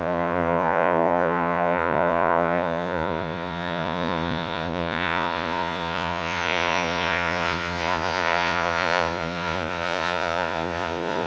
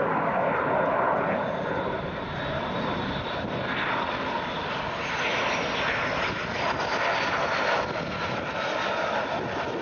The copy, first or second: first